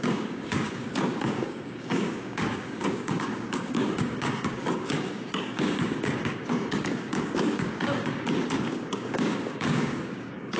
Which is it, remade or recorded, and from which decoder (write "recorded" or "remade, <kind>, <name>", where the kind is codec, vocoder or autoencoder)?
remade, codec, DAC